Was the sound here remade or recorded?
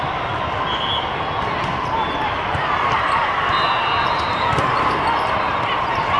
recorded